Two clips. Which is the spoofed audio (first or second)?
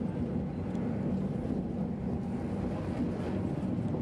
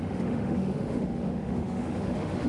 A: second